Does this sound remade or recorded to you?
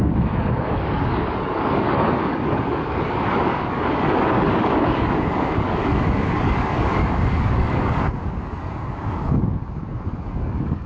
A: remade